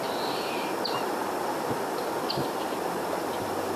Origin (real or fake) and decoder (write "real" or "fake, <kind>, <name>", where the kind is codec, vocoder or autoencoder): real